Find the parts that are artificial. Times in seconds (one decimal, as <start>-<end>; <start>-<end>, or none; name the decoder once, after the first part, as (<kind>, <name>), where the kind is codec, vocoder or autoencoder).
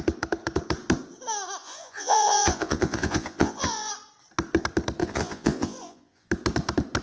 1.6-3.9 (vocoder, Vocos); 5.0-6.3